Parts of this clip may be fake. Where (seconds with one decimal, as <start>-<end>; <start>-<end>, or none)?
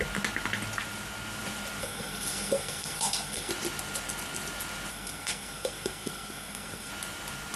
1.8-3.5; 4.9-6.9